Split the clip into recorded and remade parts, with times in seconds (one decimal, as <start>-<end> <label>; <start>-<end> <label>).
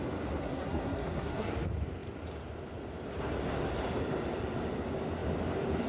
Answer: 0.0-0.4 recorded; 0.4-1.5 remade; 1.5-5.9 recorded